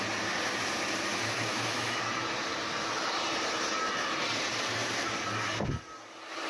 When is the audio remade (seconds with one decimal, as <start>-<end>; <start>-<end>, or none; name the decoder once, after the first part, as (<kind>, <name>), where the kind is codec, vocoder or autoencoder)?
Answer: 1.1-2.0 (autoencoder, DAC-VAE)